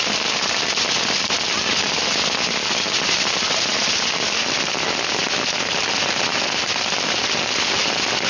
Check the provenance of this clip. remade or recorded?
recorded